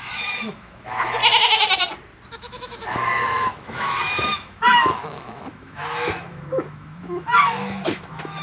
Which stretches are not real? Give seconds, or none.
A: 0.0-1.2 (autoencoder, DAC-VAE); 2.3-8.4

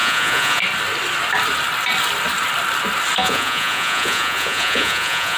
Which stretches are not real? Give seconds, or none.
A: 0.0-0.6 (vocoder, Vocos); 3.2-5.4

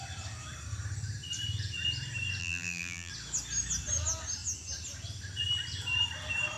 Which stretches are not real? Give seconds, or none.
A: 2.4-3.1 (vocoder, BigVGAN v2)

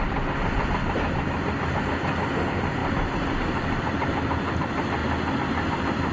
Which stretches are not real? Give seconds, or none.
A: none

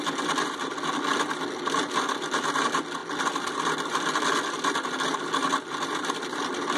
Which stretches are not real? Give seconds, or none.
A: none

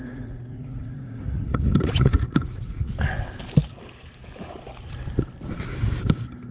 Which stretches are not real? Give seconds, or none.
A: 0.0-2.9 (vocoder, Vocos)

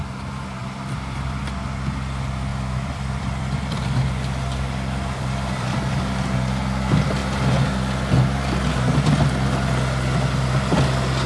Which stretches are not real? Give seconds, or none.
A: 0.6-1.4 (vocoder, BigVGAN v2); 2.5-6.0

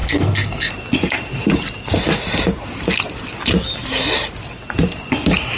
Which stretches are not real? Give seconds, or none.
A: 0.0-0.7 (codec, SNAC)